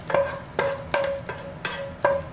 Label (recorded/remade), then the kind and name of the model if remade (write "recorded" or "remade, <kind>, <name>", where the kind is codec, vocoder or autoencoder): recorded